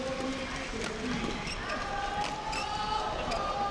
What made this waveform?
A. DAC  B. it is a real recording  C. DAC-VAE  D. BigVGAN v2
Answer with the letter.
B